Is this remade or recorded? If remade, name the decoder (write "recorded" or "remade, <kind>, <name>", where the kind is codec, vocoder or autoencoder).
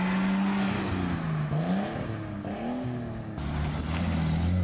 recorded